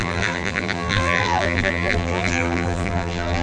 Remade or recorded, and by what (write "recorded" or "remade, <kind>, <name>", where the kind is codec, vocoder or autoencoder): remade, vocoder, BigVGAN v2